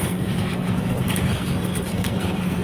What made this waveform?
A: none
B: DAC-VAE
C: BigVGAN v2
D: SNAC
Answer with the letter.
D